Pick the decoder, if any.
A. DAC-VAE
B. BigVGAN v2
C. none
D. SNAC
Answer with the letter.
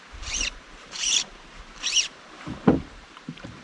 B